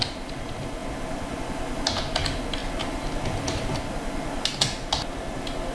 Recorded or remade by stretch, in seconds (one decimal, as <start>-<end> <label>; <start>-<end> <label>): 0.0-5.7 recorded